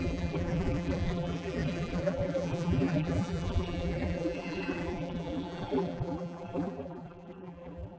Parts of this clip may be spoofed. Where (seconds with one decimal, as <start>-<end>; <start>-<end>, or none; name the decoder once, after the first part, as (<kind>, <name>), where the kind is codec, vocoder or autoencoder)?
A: 0.0-8.0 (vocoder, BigVGAN v2)